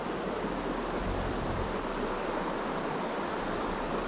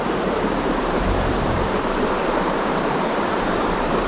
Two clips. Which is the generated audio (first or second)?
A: second